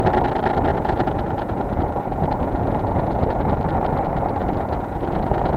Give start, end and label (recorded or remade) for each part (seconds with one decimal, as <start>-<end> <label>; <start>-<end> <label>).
0.0-0.7 recorded; 0.7-3.4 remade; 3.4-4.4 recorded; 4.4-5.6 remade